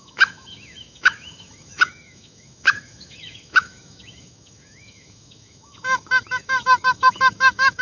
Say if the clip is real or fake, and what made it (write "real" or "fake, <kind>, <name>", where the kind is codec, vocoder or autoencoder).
fake, autoencoder, DAC-VAE